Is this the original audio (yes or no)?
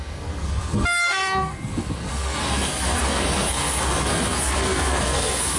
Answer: no